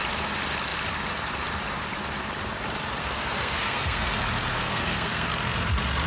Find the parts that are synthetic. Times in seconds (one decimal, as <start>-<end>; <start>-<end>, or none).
3.0-4.1; 4.5-5.3